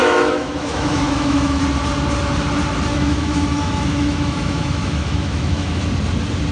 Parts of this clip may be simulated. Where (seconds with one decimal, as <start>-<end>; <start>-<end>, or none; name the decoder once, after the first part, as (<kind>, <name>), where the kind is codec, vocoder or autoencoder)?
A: 0.0-1.6 (autoencoder, DAC-VAE); 2.9-5.8